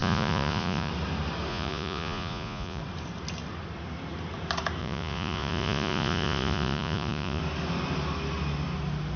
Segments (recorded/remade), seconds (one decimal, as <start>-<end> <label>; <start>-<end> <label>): 0.0-0.9 remade; 0.9-1.5 recorded; 1.5-2.8 remade; 2.8-4.8 recorded; 4.8-7.4 remade; 7.4-9.2 recorded